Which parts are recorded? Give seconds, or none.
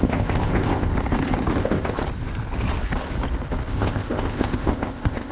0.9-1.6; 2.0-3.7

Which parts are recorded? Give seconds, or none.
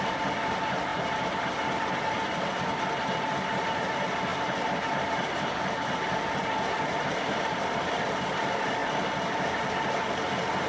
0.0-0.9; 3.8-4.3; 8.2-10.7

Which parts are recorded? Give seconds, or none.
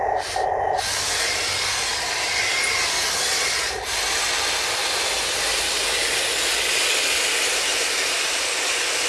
0.0-9.1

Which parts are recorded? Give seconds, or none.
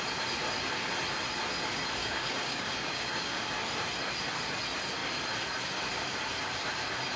0.0-2.0; 3.5-7.2